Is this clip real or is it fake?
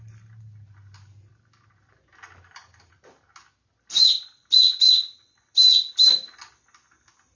real